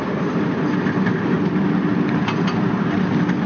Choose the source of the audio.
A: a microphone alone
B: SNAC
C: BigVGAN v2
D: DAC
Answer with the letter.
A